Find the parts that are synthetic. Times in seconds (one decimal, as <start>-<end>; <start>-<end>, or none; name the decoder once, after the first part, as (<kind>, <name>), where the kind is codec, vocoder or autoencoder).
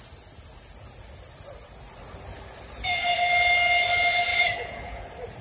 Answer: 4.3-5.0 (vocoder, Vocos)